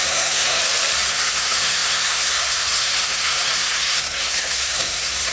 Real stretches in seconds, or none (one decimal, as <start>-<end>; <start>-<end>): 0.6-1.1